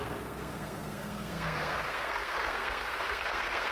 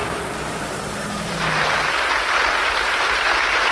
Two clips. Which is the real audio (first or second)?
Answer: second